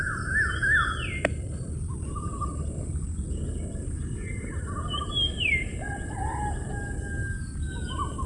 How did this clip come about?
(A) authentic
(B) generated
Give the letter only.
A